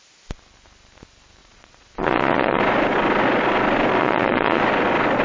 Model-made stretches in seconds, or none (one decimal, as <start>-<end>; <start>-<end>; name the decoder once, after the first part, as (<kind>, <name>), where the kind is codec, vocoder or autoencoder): 1.4-2.6 (vocoder, Vocos); 4.0-4.6